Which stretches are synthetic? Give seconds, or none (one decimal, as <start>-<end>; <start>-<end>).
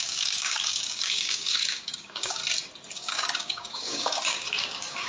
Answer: 0.0-2.4; 2.9-5.1